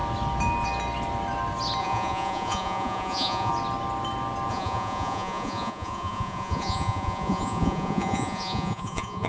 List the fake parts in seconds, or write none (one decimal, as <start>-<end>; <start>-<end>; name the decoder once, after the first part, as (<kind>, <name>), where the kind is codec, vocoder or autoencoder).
1.8-3.5 (vocoder, Vocos); 4.5-9.3